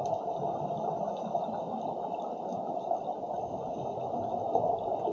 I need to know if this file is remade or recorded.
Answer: recorded